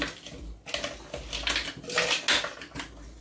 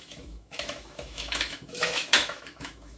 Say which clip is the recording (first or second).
first